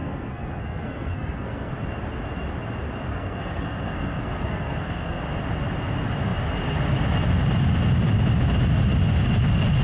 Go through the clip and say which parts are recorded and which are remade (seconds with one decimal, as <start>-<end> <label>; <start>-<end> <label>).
0.0-1.7 remade; 1.7-3.1 recorded; 3.1-5.2 remade; 5.2-9.8 recorded